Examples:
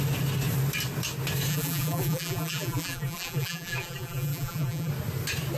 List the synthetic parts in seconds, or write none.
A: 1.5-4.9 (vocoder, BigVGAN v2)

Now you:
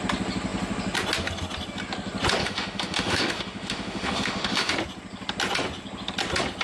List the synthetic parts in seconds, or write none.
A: 2.4-4.7 (autoencoder, DAC-VAE)

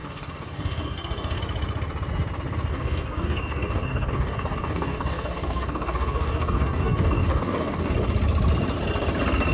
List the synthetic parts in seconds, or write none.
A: 0.0-1.4 (codec, DAC); 2.7-7.9

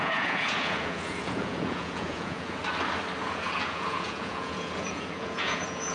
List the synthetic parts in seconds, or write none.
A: 0.0-2.6 (vocoder, Vocos); 3.2-5.9

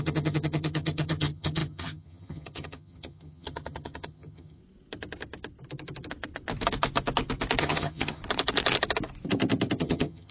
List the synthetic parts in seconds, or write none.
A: 0.0-4.6 (vocoder, HiFi-GAN); 7.6-8.2; 9.8-10.3

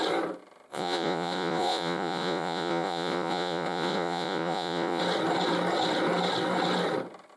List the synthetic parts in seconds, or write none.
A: 0.7-5.0 (vocoder, Vocos)

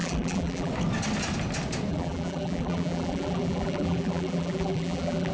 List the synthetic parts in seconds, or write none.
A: 0.0-0.7 (vocoder, BigVGAN v2); 1.9-5.3

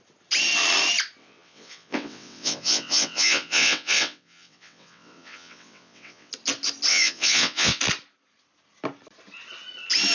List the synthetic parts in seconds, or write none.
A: 1.2-6.3 (vocoder, WaveNeXt); 6.9-7.8